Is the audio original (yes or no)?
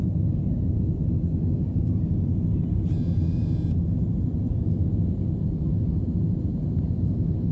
yes